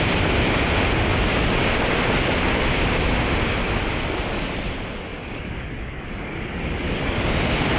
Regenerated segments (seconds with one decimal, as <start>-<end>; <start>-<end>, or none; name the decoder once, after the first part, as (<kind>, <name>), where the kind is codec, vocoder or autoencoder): 5.1-7.2 (codec, DAC)